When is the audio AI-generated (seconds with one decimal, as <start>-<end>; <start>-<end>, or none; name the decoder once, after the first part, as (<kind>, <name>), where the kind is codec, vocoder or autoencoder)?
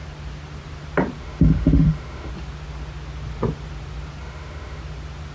1.2-2.3 (autoencoder, DAC-VAE); 4.2-4.8